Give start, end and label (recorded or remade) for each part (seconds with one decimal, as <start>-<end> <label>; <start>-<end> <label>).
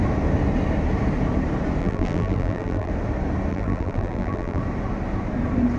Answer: 0.0-1.8 recorded; 1.8-2.9 remade; 2.9-3.5 recorded; 3.5-4.6 remade; 4.6-5.8 recorded